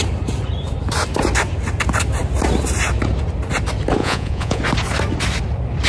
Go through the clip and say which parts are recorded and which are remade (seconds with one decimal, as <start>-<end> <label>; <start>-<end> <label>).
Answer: 0.0-4.0 recorded; 4.0-4.6 remade; 4.6-5.9 recorded